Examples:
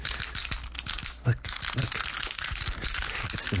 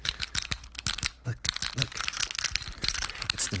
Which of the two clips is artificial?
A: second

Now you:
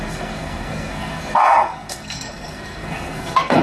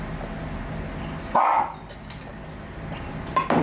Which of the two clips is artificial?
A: first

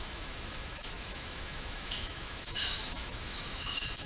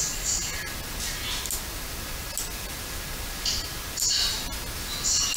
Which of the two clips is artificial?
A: first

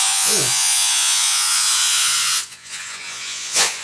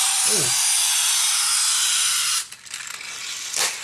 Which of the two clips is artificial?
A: first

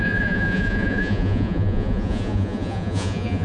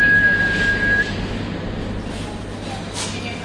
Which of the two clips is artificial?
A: first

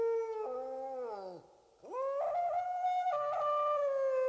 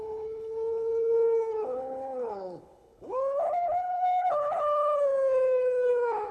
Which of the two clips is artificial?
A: second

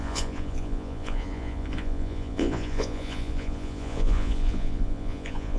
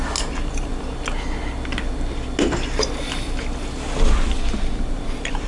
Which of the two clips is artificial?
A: first